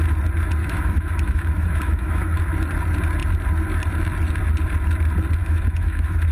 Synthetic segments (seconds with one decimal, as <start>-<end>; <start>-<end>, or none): 0.6-2.4; 5.4-6.3

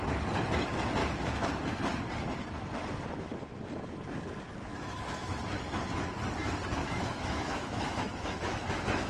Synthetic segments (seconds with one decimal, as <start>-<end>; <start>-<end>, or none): 1.0-1.5; 4.6-5.4; 6.8-9.1